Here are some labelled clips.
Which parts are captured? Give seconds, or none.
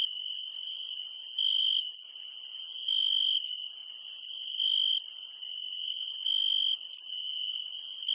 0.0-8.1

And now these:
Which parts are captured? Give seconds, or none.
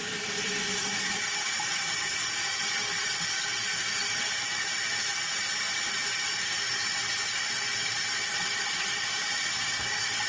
3.1-10.3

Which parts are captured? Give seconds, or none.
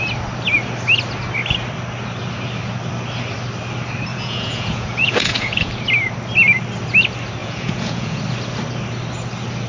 0.0-4.1; 5.7-7.4; 8.2-9.7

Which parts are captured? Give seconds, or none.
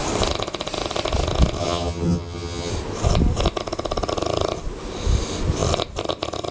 0.0-1.6; 2.7-6.5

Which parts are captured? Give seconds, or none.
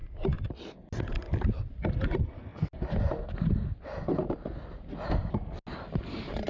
0.0-6.5